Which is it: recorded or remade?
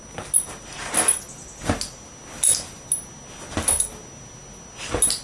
recorded